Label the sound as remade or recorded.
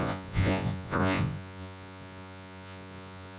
remade